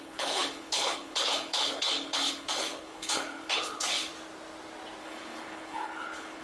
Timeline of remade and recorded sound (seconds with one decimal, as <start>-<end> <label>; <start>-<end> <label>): 0.0-4.1 remade; 4.1-5.0 recorded; 5.0-6.4 remade